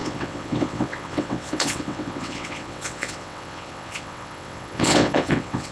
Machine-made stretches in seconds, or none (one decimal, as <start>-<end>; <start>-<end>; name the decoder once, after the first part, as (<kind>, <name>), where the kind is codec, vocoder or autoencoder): 0.0-5.7 (vocoder, WaveNeXt)